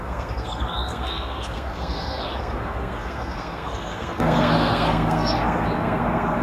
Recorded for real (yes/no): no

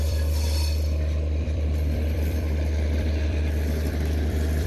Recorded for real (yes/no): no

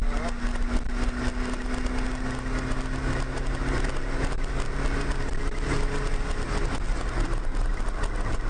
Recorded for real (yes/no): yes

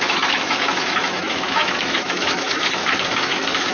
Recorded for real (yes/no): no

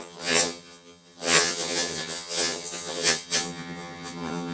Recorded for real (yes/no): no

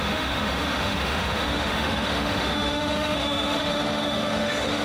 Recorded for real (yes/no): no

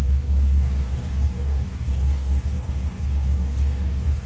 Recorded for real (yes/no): no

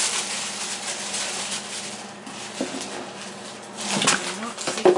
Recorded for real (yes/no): yes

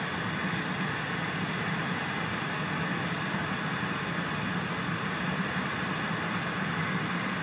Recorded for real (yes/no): yes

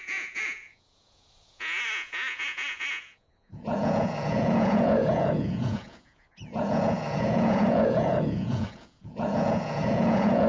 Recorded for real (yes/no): no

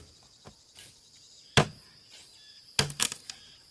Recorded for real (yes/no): yes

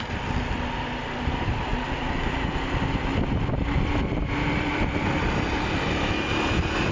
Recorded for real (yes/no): yes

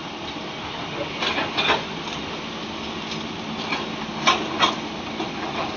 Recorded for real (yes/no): yes